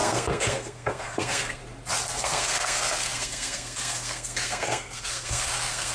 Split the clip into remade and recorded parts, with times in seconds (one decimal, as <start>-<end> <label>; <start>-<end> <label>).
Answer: 0.0-1.6 remade; 1.6-2.2 recorded; 2.2-5.9 remade